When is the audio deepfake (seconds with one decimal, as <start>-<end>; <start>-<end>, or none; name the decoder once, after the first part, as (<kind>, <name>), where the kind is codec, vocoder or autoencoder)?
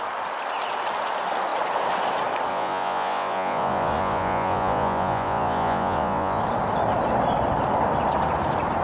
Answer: 2.5-6.4 (vocoder, Vocos)